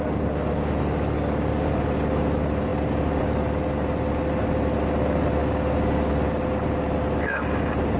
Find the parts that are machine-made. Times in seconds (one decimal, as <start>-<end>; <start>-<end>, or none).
5.4-6.1